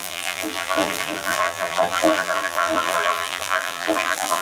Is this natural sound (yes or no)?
no